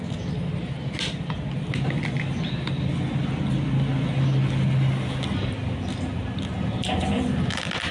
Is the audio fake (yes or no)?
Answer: no